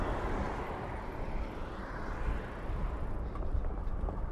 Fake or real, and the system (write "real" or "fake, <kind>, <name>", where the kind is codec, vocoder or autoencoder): real